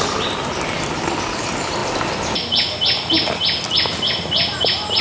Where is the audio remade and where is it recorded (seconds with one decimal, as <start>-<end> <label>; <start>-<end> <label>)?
0.0-5.0 recorded